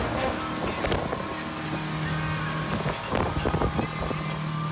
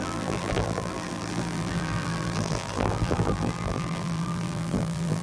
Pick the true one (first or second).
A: first